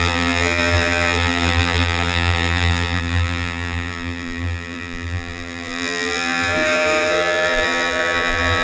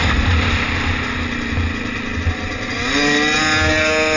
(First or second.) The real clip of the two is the second